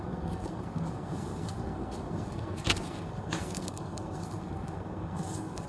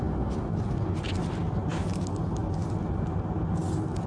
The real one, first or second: second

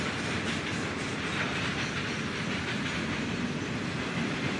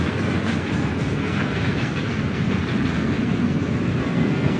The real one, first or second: first